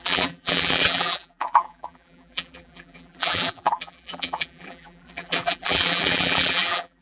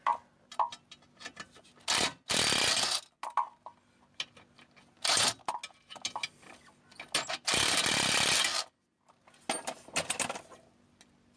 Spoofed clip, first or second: first